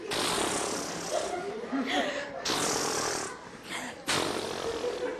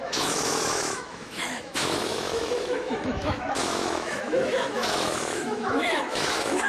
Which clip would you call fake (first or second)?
second